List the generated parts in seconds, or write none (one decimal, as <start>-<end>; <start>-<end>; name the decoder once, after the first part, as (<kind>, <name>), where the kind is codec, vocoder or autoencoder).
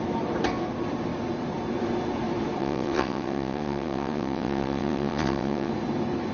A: 2.6-5.7 (vocoder, WaveNeXt)